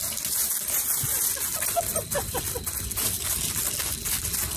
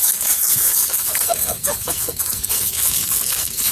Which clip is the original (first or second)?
first